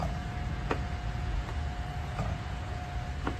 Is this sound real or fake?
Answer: fake